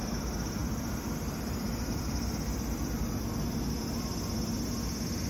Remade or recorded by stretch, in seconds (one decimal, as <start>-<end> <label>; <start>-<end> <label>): 0.0-0.6 recorded; 0.6-3.8 remade; 3.8-5.3 recorded